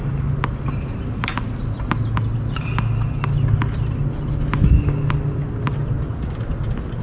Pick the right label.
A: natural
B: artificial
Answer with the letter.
A